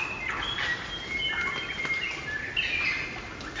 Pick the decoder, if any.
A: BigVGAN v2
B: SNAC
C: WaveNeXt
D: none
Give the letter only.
D